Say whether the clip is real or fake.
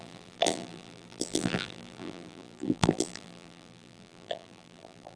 fake